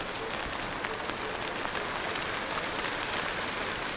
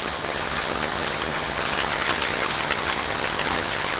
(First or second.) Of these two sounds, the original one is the first